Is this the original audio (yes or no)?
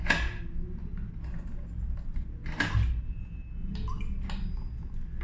yes